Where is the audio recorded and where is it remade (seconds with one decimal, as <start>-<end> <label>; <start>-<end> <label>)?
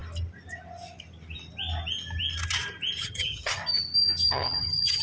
0.0-3.0 recorded; 3.0-3.6 remade; 3.6-4.3 recorded; 4.3-5.0 remade